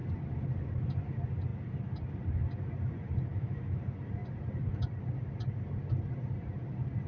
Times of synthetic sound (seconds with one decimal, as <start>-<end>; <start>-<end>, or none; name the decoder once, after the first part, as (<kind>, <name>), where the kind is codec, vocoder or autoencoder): 3.3-3.8 (autoencoder, DAC-VAE)